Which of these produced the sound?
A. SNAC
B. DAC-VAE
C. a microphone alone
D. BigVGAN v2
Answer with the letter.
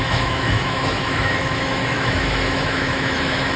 B